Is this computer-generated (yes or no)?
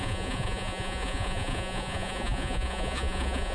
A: yes